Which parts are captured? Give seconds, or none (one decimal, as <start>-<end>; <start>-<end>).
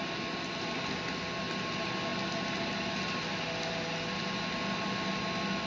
0.0-5.7